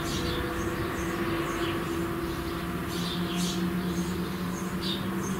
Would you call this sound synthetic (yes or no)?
no